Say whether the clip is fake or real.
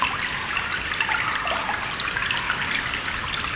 real